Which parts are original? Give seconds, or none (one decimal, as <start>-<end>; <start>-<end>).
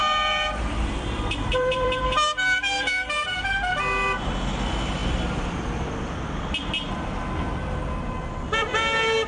3.7-9.3